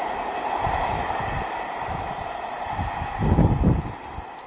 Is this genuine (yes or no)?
yes